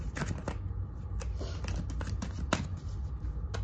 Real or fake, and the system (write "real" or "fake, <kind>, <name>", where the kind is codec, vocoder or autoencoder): real